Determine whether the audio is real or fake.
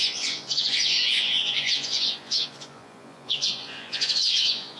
fake